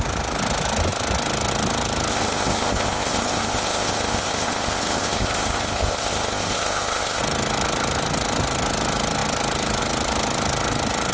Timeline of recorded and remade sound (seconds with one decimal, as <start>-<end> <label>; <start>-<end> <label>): 0.0-2.1 recorded; 2.1-7.2 remade; 7.2-11.1 recorded